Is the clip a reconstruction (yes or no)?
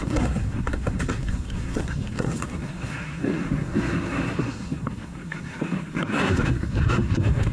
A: yes